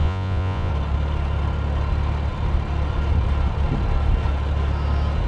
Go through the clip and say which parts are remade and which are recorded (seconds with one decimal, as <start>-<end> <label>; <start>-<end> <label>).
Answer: 0.0-0.7 remade; 0.7-5.3 recorded